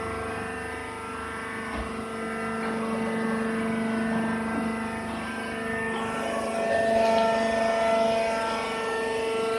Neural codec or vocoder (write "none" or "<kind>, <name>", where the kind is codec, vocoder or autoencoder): none